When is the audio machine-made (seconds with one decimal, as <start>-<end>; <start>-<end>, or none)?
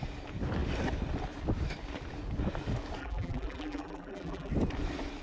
3.0-4.5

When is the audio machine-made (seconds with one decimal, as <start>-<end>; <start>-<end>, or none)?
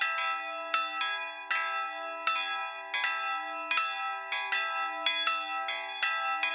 none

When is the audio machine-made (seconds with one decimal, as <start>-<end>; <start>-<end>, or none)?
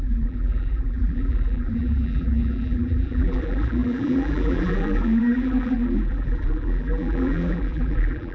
0.0-8.3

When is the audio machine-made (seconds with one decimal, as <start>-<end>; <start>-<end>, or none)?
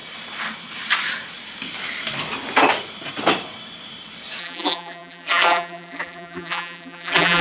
4.4-7.4